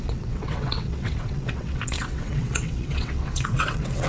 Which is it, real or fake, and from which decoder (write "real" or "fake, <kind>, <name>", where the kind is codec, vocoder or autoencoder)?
fake, vocoder, WaveNeXt